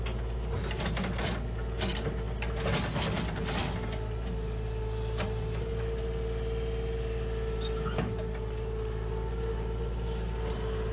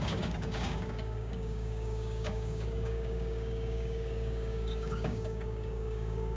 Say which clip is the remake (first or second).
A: second